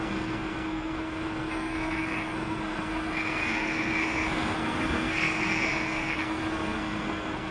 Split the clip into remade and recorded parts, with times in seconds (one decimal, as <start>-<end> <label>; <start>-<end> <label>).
0.0-7.5 remade